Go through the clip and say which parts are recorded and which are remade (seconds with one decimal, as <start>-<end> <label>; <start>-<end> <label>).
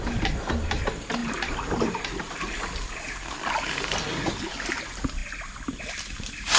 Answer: 0.0-6.6 recorded